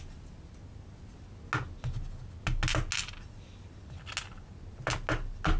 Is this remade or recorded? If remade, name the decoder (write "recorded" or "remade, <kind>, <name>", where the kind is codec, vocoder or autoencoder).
recorded